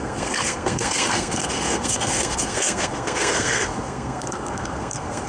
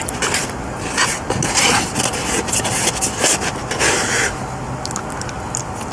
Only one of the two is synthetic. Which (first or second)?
first